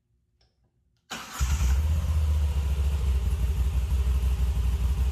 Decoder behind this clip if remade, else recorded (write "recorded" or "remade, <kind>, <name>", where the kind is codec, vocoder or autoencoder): recorded